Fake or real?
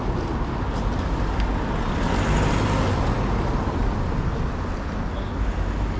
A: real